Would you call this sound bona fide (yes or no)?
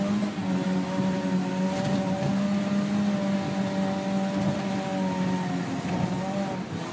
yes